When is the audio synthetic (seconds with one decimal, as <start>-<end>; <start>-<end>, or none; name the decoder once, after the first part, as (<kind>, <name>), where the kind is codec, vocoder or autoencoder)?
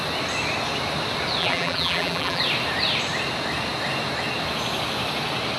1.4-2.4 (vocoder, BigVGAN v2)